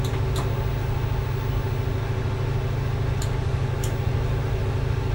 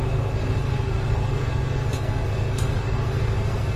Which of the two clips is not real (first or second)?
second